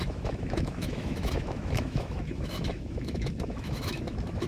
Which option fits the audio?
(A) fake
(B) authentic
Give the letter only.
A